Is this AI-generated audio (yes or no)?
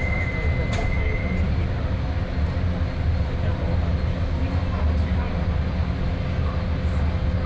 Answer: no